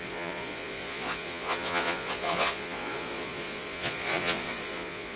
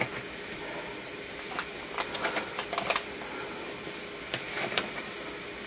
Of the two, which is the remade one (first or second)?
first